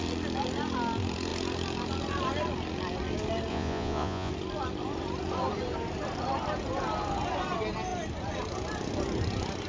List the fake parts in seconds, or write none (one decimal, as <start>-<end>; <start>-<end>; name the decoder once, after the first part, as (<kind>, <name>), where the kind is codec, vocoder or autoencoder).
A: 3.5-4.3 (vocoder, Vocos)